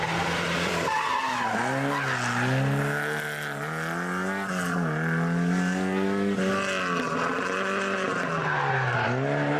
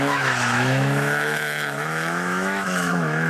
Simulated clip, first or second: second